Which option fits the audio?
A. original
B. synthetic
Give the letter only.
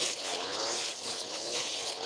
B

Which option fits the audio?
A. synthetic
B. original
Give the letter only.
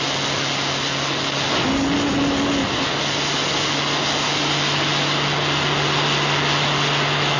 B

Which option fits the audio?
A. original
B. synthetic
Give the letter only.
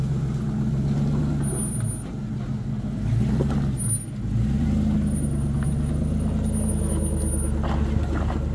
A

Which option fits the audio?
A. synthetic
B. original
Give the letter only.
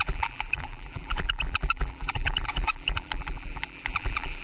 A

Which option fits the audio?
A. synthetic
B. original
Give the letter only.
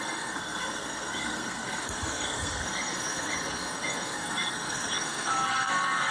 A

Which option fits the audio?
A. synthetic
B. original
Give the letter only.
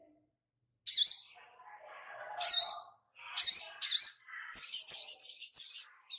B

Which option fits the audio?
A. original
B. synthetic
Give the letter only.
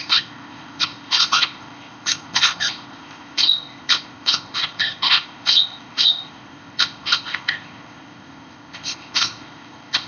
B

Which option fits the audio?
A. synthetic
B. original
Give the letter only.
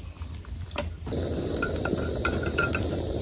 A